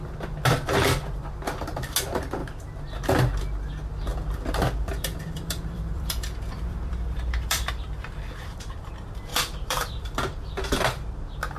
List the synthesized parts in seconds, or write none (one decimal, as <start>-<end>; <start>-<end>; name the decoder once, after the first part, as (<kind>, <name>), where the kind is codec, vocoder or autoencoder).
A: 4.1-8.9 (vocoder, BigVGAN v2); 9.3-10.8